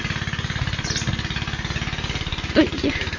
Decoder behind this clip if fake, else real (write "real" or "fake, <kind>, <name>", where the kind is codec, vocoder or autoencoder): real